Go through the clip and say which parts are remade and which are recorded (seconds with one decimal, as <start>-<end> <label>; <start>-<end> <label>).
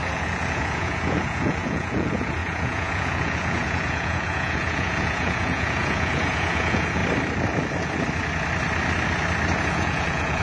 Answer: 0.0-7.0 remade; 7.0-9.6 recorded; 9.6-10.4 remade